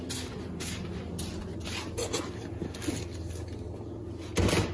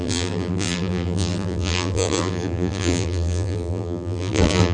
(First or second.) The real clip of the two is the first